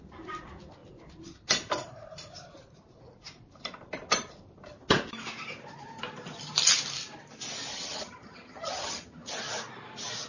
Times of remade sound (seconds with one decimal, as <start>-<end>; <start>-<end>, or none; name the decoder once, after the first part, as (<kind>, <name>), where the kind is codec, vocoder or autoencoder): 7.7-9.3 (vocoder, HiFi-GAN)